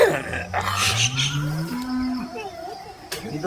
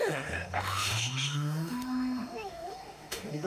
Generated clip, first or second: second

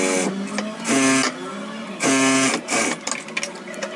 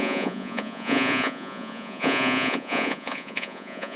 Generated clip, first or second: second